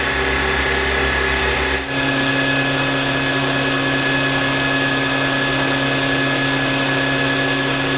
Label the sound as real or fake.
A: real